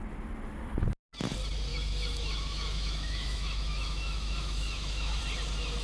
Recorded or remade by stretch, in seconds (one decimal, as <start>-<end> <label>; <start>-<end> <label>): 0.0-1.7 recorded; 1.7-5.2 remade; 5.2-5.8 recorded